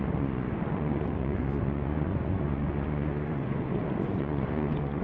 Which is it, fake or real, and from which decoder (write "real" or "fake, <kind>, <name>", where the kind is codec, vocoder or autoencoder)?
fake, vocoder, Vocos